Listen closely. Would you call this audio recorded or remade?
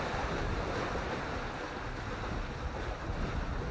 recorded